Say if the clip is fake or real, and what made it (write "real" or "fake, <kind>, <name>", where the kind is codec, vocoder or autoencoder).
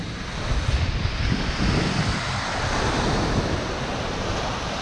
real